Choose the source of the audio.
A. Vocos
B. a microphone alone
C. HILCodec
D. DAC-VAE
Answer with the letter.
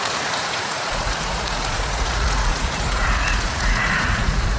A